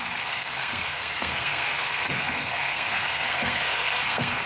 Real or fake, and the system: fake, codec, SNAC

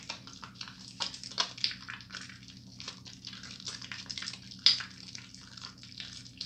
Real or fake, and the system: real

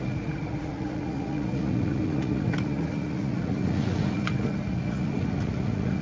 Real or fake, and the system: fake, vocoder, Vocos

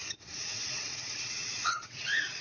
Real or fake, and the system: fake, vocoder, WaveNeXt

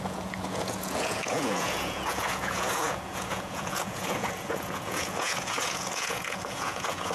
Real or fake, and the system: fake, vocoder, Vocos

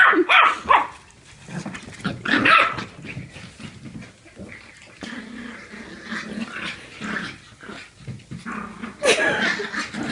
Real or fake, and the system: real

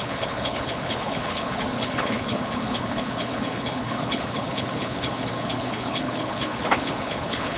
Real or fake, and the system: fake, codec, HILCodec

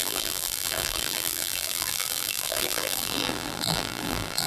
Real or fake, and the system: fake, vocoder, BigVGAN v2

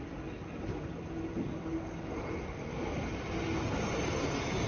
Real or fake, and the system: real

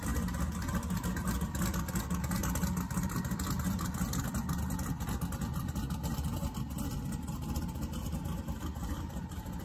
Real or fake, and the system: real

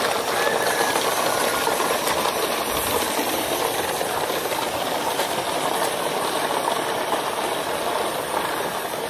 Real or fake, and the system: real